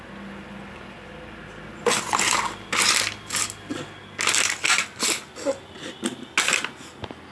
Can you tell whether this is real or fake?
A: real